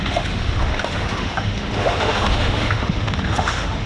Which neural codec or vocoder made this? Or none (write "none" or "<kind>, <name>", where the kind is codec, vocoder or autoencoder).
autoencoder, DAC-VAE